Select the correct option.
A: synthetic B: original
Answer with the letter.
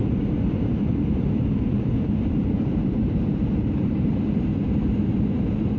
A